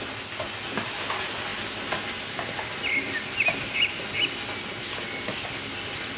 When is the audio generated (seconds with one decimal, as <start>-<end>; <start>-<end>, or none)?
none